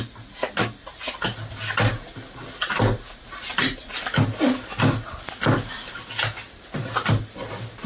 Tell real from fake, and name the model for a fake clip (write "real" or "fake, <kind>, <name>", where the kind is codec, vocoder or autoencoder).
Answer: real